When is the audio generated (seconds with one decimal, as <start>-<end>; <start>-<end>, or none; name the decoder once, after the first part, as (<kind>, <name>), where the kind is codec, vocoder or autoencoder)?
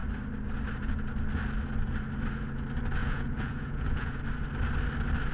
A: 3.0-4.2 (vocoder, Vocos)